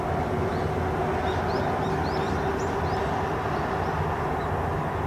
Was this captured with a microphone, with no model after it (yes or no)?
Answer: yes